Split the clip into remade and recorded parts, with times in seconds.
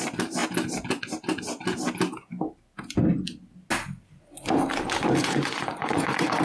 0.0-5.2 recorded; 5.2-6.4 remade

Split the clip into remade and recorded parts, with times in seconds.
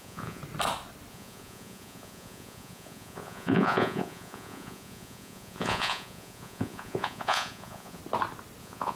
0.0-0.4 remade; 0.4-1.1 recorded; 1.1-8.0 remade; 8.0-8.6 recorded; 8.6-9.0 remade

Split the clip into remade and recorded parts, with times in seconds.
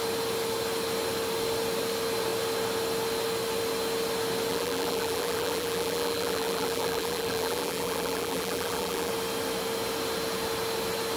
0.0-4.5 recorded; 4.5-9.1 remade; 9.1-11.2 recorded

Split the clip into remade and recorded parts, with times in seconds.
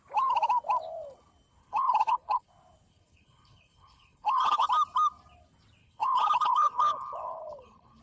0.0-1.6 recorded; 1.6-2.5 remade; 2.5-2.9 recorded; 2.9-4.7 remade; 4.7-5.8 recorded; 5.8-8.0 remade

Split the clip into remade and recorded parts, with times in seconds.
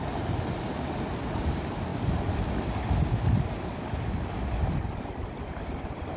0.0-6.2 recorded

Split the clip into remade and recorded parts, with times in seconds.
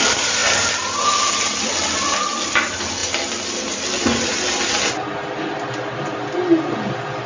0.0-7.3 recorded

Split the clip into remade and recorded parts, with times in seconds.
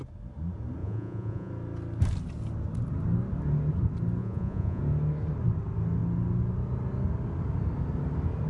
0.0-0.8 recorded; 0.8-1.5 remade; 1.5-4.2 recorded; 4.2-4.8 remade; 4.8-8.5 recorded